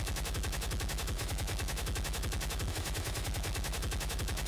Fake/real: fake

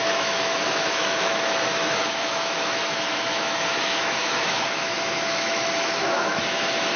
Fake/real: fake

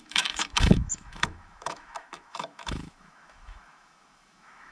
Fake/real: fake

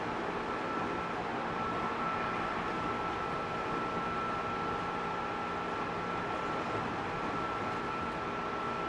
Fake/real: real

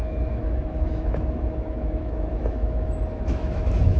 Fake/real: fake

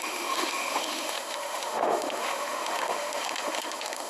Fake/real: fake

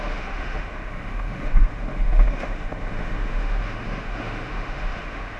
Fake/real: fake